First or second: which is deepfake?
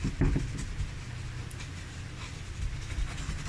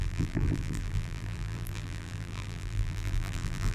second